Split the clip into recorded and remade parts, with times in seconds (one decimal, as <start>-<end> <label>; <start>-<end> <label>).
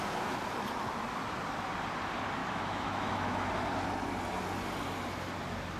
0.0-2.4 recorded; 2.4-3.5 remade; 3.5-5.8 recorded